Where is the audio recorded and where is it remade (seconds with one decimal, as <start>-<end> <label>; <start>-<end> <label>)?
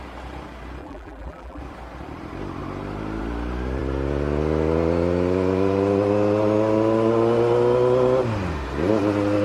0.0-0.8 recorded; 0.8-1.6 remade; 1.6-9.4 recorded